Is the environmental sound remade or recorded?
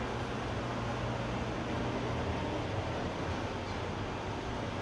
recorded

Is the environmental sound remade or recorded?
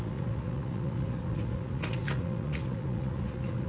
remade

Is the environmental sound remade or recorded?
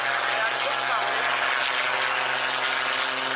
recorded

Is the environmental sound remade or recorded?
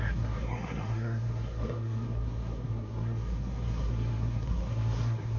remade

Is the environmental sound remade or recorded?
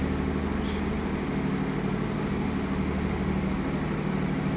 recorded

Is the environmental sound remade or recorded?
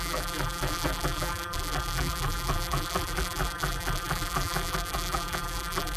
remade